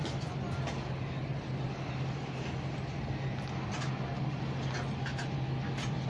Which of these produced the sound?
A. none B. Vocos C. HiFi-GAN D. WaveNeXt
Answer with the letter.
A